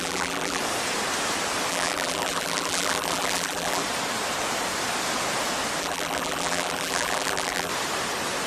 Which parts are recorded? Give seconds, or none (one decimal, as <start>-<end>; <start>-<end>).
0.6-1.7; 3.8-5.8; 7.7-8.5